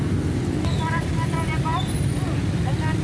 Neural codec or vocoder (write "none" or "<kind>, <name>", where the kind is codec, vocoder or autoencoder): none